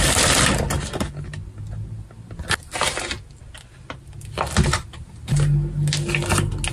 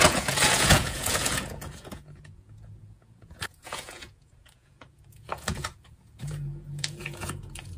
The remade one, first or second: second